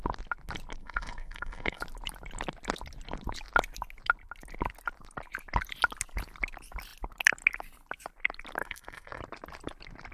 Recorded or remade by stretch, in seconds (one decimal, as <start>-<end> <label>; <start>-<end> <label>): 0.0-0.8 recorded; 0.8-1.8 remade; 1.8-8.6 recorded; 8.6-9.2 remade; 9.2-10.1 recorded